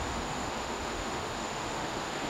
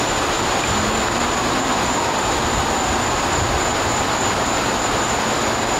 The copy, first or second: first